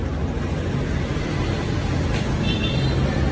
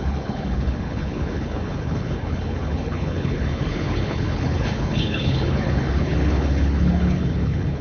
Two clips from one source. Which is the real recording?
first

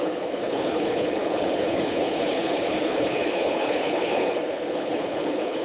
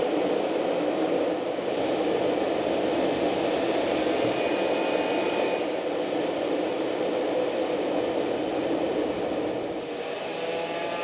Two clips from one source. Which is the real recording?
second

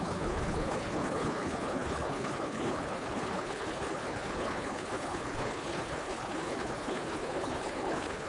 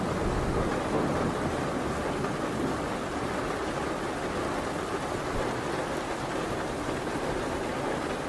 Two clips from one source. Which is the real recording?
second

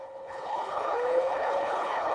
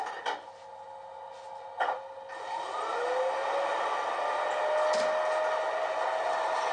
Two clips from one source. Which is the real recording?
second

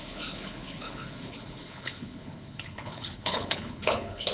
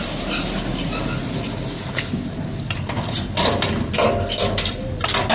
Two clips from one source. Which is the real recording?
second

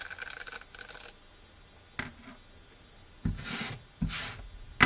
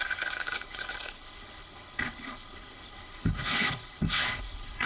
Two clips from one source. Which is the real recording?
first